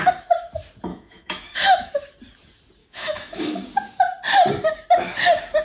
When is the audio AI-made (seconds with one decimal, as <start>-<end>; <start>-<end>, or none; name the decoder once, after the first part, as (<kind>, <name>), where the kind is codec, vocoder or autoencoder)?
0.9-1.9 (autoencoder, DAC-VAE); 2.8-3.6